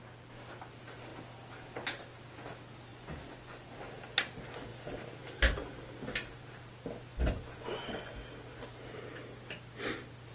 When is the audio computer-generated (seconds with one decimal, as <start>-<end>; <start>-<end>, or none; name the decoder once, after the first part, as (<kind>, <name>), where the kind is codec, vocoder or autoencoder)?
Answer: 2.9-3.7 (vocoder, Vocos); 7.1-8.1